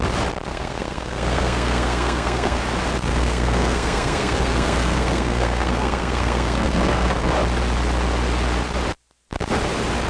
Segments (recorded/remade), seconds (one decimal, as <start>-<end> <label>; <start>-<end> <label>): 0.0-0.5 recorded; 0.5-2.6 remade; 2.6-3.1 recorded; 3.1-7.3 remade; 7.3-10.1 recorded